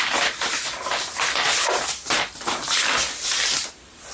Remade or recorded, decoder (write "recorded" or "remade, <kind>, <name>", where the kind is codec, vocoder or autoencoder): remade, vocoder, BigVGAN v2